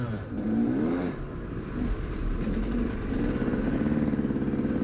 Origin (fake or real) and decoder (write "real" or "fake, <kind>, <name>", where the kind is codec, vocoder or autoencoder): fake, vocoder, BigVGAN v2